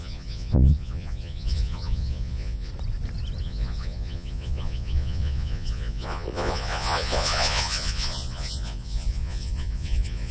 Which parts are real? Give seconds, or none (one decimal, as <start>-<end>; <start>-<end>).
2.7-3.4